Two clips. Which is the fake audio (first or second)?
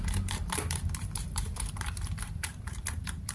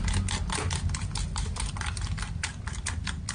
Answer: first